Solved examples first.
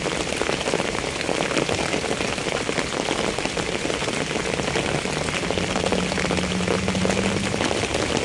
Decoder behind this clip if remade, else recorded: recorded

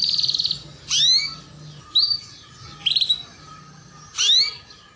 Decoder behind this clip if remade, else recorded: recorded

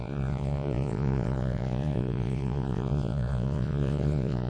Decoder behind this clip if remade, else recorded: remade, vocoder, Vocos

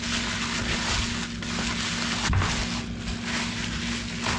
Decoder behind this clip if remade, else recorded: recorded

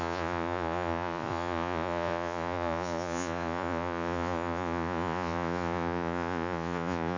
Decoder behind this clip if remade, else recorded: remade, vocoder, Vocos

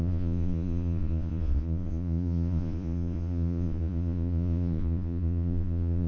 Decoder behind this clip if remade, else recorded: remade, vocoder, Vocos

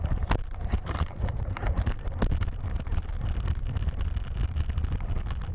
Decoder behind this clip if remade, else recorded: recorded